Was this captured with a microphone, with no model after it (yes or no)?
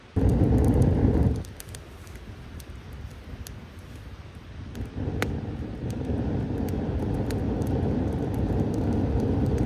yes